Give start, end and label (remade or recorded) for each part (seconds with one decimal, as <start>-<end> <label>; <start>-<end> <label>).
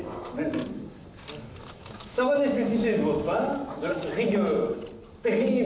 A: 0.0-1.6 recorded; 1.6-4.3 remade; 4.3-5.6 recorded